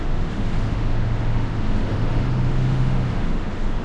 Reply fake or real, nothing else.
fake